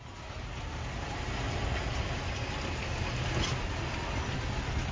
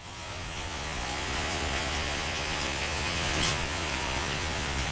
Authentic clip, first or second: first